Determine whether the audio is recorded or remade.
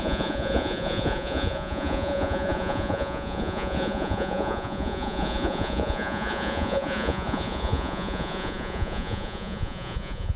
remade